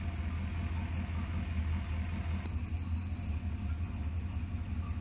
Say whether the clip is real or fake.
real